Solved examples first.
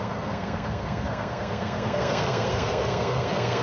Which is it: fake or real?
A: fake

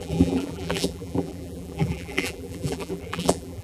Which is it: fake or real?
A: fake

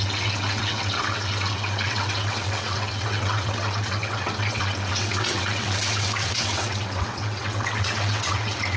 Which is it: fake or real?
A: fake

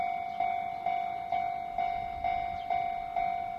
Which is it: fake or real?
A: real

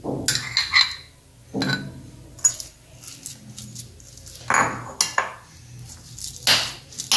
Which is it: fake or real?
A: real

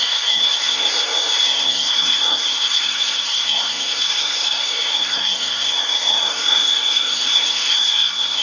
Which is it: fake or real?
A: fake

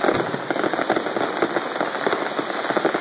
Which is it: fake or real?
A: real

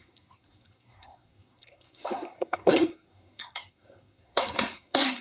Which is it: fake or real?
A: fake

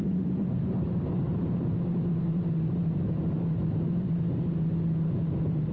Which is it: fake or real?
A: fake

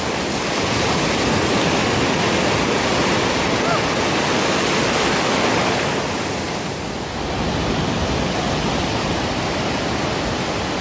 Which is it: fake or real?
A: real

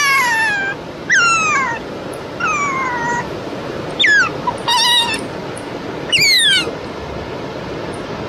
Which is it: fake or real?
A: real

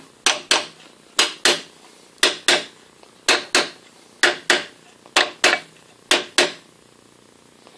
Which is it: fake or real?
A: real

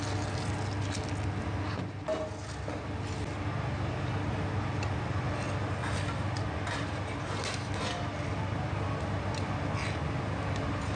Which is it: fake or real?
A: real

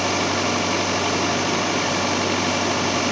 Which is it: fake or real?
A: real